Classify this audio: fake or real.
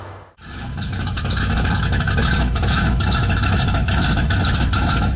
fake